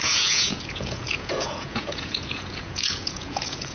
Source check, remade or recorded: remade